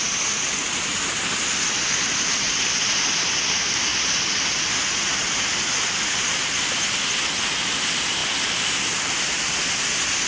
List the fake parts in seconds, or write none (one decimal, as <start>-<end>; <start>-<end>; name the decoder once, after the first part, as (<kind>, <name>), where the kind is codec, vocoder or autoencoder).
none